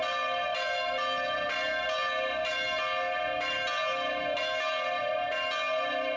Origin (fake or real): real